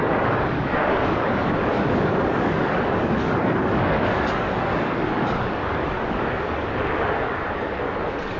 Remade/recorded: remade